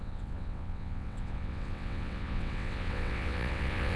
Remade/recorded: remade